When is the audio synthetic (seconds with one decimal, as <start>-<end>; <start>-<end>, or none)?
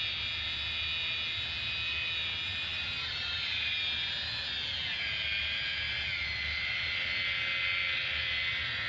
none